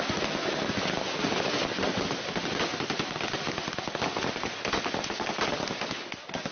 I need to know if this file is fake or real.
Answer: real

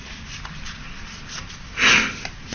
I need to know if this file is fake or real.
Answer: real